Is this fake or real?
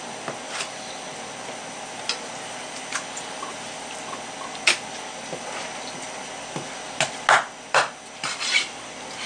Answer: real